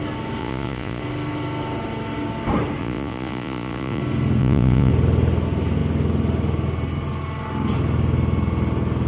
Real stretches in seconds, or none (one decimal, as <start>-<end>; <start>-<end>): 0.0-0.4; 1.0-2.8; 4.0-4.4; 4.9-9.1